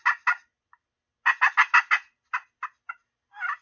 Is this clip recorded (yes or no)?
yes